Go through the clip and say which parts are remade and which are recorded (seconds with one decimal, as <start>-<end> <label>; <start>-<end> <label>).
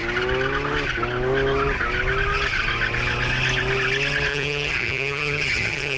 0.0-4.3 recorded; 4.3-6.0 remade